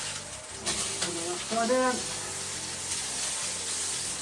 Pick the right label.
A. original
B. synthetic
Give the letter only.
A